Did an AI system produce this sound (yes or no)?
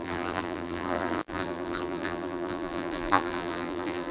yes